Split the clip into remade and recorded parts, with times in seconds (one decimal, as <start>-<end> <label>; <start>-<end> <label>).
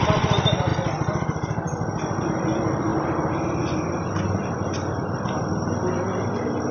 0.0-6.7 recorded